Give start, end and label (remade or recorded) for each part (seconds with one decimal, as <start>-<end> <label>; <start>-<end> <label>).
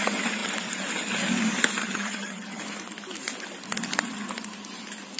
0.0-1.8 recorded; 1.8-2.6 remade; 2.6-5.2 recorded